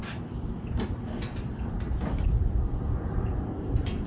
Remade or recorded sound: recorded